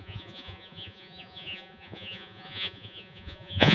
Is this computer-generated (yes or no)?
yes